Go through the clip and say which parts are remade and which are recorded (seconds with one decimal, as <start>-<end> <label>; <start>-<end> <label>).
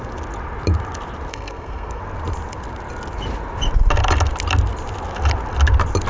0.0-1.3 recorded; 1.3-2.0 remade; 2.0-6.1 recorded